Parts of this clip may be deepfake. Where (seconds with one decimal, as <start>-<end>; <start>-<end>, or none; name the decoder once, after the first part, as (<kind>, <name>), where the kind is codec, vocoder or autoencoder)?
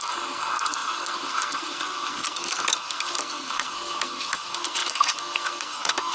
0.0-6.1 (codec, SNAC)